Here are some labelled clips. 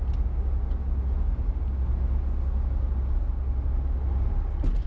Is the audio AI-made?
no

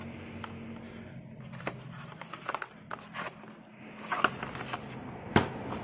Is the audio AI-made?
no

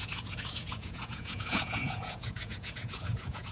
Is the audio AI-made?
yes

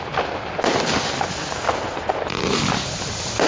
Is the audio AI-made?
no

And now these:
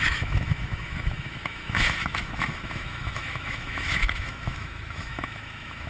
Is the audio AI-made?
yes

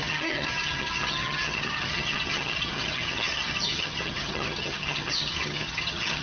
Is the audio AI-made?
yes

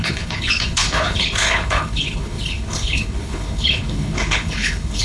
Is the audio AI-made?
yes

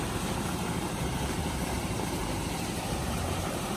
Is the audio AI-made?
yes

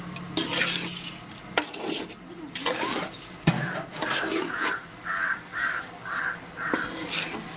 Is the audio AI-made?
no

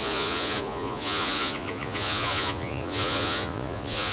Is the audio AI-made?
yes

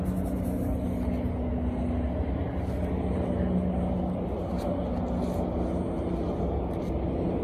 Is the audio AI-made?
no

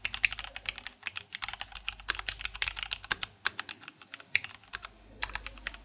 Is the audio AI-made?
no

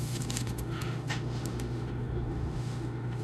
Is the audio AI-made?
yes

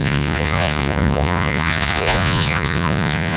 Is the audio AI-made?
yes